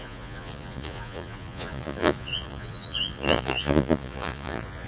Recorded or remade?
remade